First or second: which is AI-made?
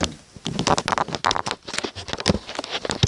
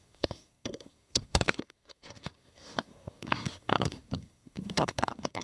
second